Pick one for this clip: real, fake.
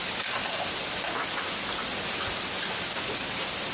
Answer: real